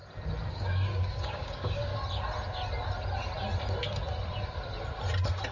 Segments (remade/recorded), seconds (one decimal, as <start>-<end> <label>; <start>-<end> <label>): 0.0-0.5 recorded; 0.5-1.9 remade; 1.9-5.5 recorded